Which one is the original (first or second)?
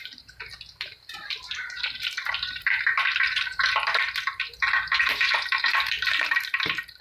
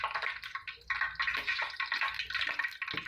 second